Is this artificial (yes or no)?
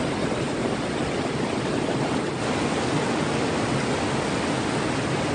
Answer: no